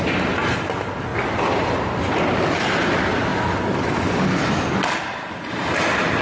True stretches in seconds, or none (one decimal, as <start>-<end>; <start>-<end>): 0.0-6.2

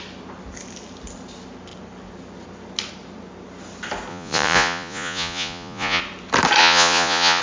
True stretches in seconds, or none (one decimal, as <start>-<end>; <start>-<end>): 0.0-4.1; 6.0-6.6

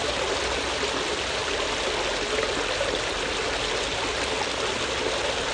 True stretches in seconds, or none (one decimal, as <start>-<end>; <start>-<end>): 0.0-5.5

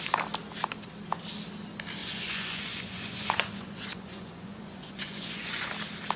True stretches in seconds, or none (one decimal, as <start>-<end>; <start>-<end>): 0.0-2.0; 5.7-6.2